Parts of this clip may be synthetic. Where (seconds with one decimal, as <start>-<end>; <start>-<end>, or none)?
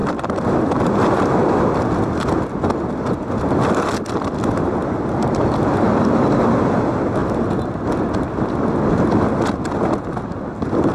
0.0-1.7